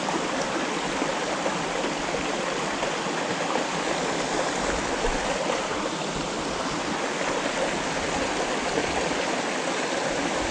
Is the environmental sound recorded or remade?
recorded